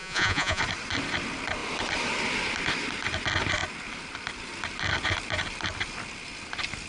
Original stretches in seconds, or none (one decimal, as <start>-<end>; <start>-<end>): 0.6-6.9